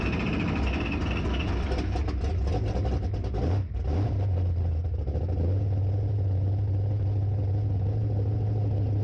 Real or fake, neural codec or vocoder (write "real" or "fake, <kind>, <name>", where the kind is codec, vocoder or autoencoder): real